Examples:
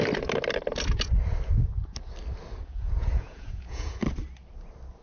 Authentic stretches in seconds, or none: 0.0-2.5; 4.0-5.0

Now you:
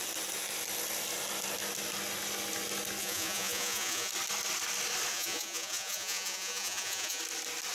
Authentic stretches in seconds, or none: 0.0-3.0; 4.1-5.1; 7.2-7.7

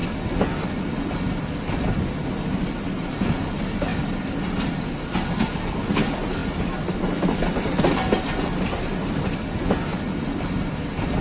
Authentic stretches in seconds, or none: 0.0-11.2

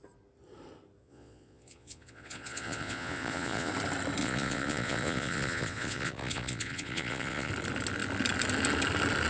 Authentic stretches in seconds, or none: 0.0-1.0; 3.7-4.2; 7.5-9.3